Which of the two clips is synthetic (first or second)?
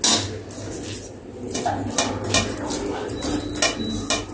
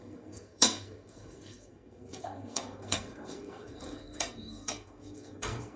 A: second